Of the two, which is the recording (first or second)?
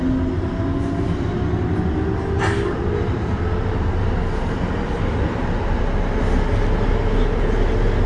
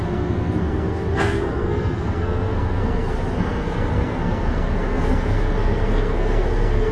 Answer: first